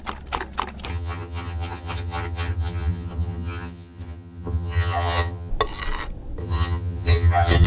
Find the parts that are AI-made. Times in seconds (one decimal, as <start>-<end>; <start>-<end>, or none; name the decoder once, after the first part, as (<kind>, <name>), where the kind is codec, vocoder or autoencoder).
0.9-5.5 (vocoder, HiFi-GAN); 6.4-7.7

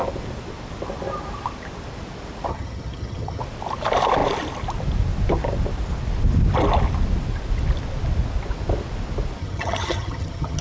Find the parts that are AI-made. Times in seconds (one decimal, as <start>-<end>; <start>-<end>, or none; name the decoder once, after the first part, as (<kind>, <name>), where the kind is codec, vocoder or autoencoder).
2.5-3.4 (vocoder, HiFi-GAN); 9.4-10.6

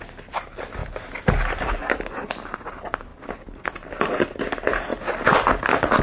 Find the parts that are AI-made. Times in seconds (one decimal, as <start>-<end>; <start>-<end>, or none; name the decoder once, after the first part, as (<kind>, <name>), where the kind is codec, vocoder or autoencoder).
none

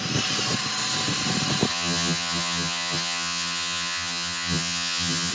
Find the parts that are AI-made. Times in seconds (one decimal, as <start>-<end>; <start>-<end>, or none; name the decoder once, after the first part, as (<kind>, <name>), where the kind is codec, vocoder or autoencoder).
1.7-5.3 (vocoder, HiFi-GAN)

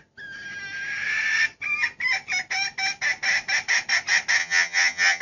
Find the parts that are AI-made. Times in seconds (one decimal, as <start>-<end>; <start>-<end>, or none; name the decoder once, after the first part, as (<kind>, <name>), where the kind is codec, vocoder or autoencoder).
4.4-5.2 (vocoder, HiFi-GAN)

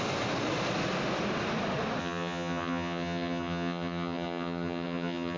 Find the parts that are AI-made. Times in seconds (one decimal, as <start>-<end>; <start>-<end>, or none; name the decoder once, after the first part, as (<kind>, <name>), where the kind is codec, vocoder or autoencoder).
2.0-5.4 (vocoder, HiFi-GAN)

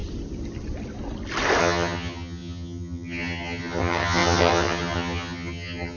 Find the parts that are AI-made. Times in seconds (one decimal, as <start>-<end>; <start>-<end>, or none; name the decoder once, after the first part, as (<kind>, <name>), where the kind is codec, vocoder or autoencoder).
1.6-6.0 (vocoder, HiFi-GAN)

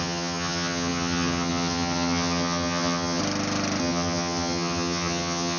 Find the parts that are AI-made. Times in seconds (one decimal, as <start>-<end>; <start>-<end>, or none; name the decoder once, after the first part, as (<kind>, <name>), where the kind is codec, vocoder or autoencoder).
0.0-3.2 (vocoder, HiFi-GAN); 3.8-5.6